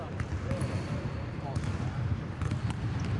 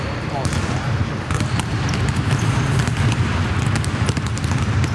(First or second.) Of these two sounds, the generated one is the first